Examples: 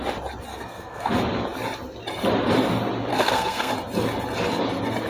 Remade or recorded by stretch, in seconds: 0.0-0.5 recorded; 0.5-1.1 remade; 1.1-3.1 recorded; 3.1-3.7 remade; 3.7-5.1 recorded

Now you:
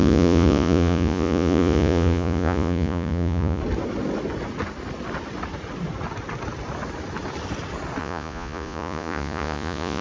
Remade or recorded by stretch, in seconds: 0.0-3.6 remade; 3.6-8.0 recorded; 8.0-10.0 remade